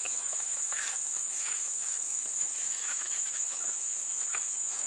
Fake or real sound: fake